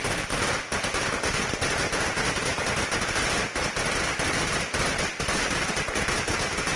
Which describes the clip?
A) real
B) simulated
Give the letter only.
A